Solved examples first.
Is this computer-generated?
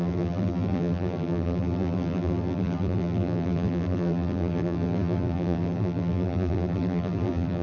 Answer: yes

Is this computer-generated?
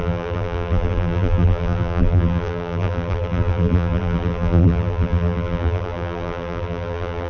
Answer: yes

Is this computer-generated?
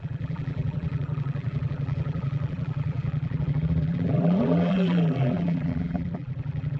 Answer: yes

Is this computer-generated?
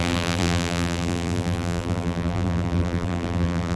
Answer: yes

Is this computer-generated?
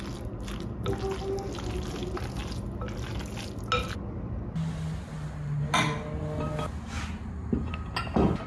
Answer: no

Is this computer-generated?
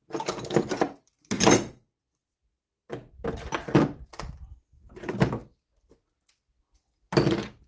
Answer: yes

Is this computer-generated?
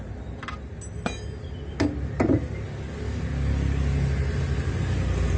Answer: no